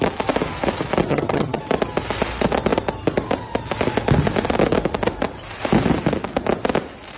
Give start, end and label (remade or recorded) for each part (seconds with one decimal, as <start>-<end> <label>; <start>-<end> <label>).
0.0-1.1 recorded; 1.1-1.6 remade; 1.6-7.2 recorded